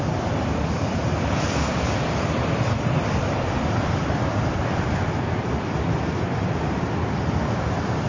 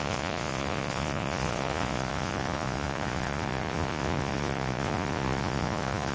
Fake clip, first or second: second